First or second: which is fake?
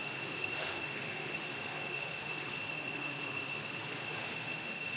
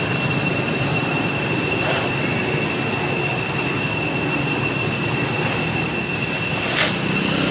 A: first